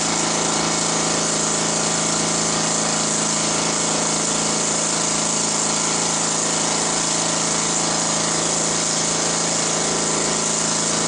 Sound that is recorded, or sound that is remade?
recorded